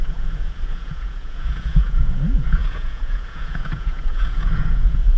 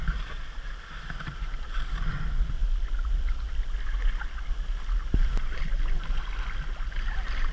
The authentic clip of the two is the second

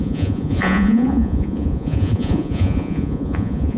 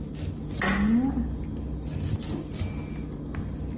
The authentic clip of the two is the second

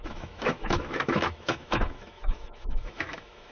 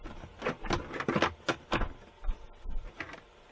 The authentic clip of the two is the second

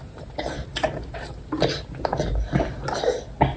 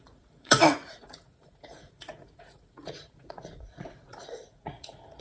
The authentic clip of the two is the first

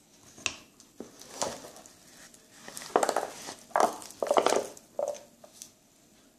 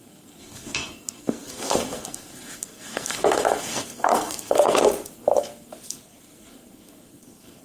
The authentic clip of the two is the first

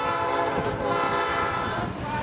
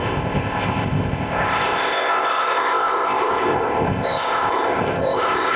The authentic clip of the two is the first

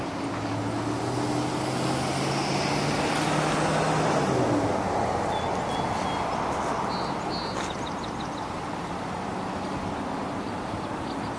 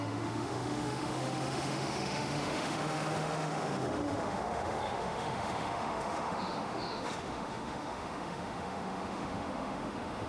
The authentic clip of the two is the first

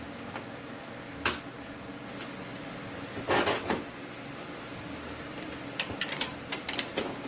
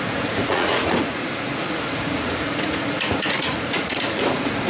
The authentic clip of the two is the first